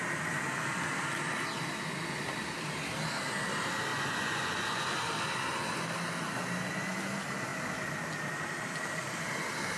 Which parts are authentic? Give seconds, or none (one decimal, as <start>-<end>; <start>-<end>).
0.0-3.9; 4.8-9.8